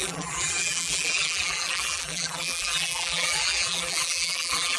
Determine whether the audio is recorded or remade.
remade